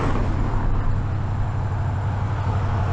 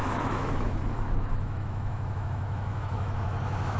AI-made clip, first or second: second